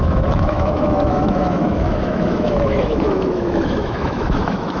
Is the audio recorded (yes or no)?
no